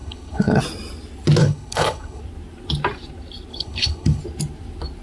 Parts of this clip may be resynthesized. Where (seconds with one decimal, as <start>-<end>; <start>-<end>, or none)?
0.0-0.6; 1.4-2.2; 3.5-4.2